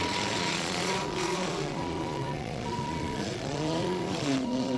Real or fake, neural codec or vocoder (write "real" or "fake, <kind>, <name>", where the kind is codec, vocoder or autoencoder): fake, vocoder, Vocos